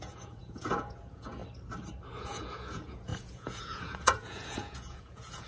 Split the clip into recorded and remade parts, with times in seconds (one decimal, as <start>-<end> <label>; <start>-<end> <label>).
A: 0.0-1.4 remade; 1.4-2.2 recorded; 2.2-5.5 remade